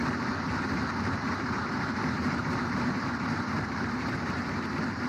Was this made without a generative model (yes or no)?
no